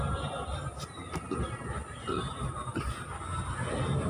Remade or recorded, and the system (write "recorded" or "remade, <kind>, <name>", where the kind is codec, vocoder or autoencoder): recorded